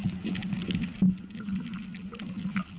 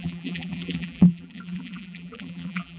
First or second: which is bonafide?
first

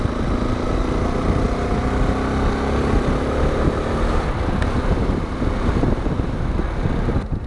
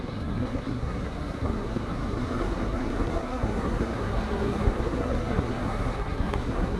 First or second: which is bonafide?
first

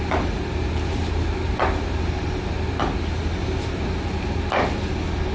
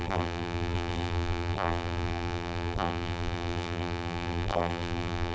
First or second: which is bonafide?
first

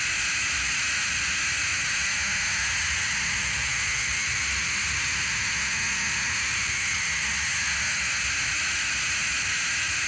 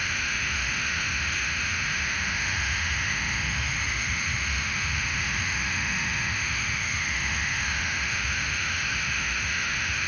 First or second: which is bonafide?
first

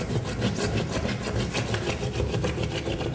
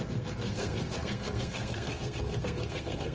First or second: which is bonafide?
first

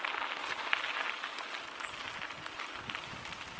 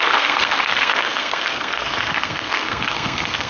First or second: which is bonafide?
first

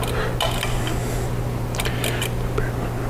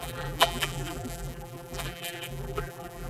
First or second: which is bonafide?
first